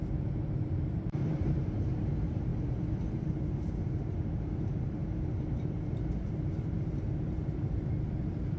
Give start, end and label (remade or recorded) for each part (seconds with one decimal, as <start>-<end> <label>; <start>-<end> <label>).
0.0-8.6 remade

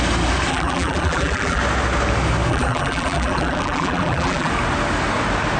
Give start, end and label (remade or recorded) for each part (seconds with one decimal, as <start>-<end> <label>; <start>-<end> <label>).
0.0-0.5 recorded; 0.5-1.6 remade; 1.6-2.5 recorded; 2.5-4.5 remade; 4.5-5.6 recorded

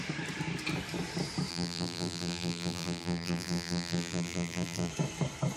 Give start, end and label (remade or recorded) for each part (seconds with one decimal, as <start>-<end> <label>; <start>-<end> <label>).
0.0-1.5 recorded; 1.5-4.9 remade; 4.9-5.6 recorded